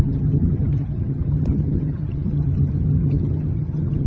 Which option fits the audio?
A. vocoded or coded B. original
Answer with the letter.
A